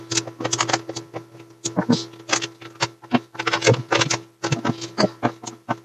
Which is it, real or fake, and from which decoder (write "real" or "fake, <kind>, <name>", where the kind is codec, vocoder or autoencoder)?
real